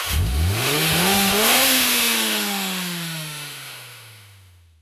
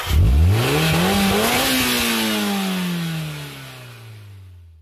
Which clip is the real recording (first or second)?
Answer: second